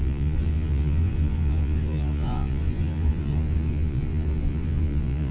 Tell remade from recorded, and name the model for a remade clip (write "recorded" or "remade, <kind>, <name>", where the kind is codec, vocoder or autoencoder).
remade, vocoder, Vocos